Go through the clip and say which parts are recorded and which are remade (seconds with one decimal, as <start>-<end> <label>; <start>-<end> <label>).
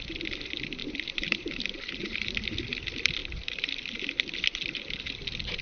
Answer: 0.0-0.8 recorded; 0.8-2.3 remade; 2.3-3.2 recorded; 3.2-4.0 remade; 4.0-5.6 recorded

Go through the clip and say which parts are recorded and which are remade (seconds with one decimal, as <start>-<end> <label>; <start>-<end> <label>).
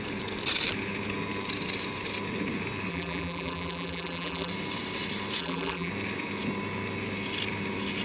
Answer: 0.0-2.9 recorded; 2.9-4.5 remade; 4.5-5.4 recorded; 5.4-5.9 remade; 5.9-8.0 recorded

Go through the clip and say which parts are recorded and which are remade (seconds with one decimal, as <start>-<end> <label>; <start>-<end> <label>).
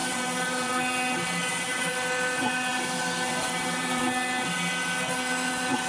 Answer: 0.0-0.7 remade; 0.7-2.7 recorded; 2.7-4.0 remade; 4.0-5.9 recorded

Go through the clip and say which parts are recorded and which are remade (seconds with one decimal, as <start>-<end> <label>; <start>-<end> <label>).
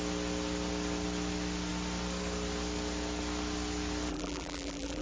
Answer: 0.0-4.1 recorded; 4.1-5.0 remade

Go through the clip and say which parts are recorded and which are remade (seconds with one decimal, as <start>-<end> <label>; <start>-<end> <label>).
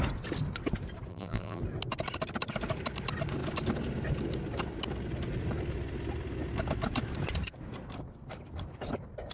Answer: 0.0-1.1 recorded; 1.1-1.6 remade; 1.6-9.3 recorded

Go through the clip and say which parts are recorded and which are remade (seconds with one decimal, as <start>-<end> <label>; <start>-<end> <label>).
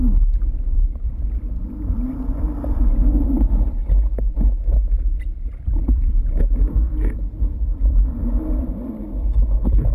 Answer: 0.0-3.8 remade; 3.8-5.8 recorded; 5.8-9.0 remade; 9.0-9.9 recorded